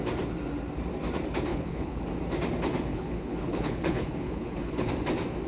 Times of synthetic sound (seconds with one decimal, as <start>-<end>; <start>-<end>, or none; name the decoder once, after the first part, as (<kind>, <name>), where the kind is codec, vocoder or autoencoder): 1.5-2.0 (codec, HILCodec); 2.9-4.9